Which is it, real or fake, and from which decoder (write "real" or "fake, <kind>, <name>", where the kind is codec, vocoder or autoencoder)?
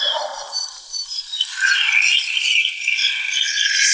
real